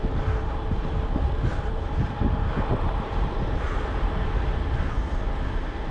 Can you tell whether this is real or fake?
real